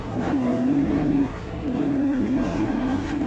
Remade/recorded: remade